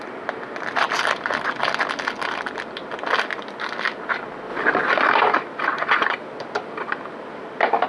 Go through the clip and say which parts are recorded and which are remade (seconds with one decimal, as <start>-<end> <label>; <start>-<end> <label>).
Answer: 0.0-7.9 recorded